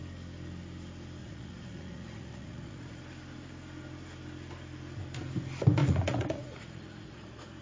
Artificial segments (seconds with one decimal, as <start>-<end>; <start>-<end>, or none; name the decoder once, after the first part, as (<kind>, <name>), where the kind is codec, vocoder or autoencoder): 1.2-3.0 (vocoder, Vocos); 5.8-7.6